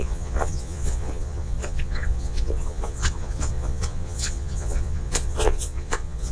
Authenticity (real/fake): fake